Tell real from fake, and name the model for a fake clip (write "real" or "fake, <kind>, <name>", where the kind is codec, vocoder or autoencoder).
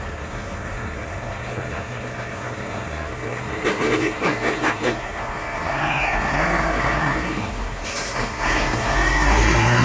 fake, codec, SNAC